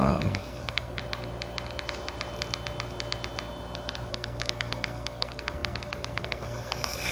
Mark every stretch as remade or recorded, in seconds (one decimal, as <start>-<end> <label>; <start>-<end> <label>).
0.0-1.0 remade; 1.0-4.1 recorded; 4.1-7.1 remade

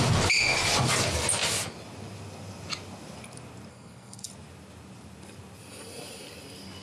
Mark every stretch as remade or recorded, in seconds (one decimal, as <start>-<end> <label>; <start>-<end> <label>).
0.0-3.7 recorded; 3.7-4.3 remade; 4.3-6.8 recorded

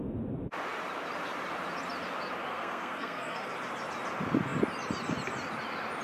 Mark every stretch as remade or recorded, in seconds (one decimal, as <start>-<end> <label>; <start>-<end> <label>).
0.0-2.5 recorded; 2.5-3.5 remade; 3.5-6.0 recorded

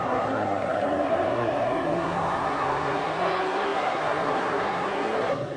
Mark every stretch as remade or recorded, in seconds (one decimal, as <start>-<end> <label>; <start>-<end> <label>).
0.0-5.6 remade

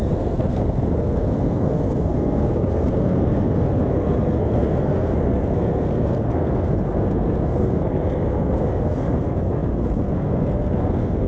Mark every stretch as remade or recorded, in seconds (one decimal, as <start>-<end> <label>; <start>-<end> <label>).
0.0-11.3 remade

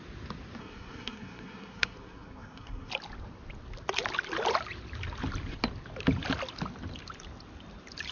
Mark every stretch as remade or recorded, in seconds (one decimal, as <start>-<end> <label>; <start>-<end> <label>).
0.0-0.6 recorded; 0.6-2.9 remade; 2.9-8.1 recorded

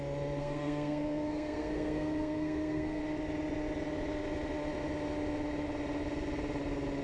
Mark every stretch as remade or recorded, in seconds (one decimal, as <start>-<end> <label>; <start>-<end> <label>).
0.0-0.4 recorded; 0.4-3.0 remade; 3.0-7.0 recorded